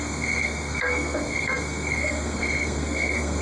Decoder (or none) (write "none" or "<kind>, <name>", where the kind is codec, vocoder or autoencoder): codec, SNAC